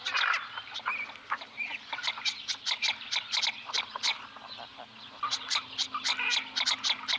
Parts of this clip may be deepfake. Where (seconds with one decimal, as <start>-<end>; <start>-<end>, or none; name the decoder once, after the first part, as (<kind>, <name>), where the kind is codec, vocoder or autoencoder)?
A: none